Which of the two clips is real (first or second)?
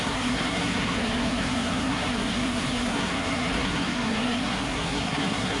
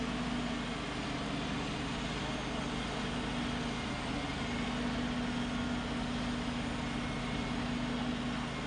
second